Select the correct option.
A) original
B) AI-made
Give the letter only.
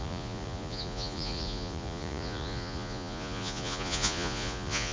B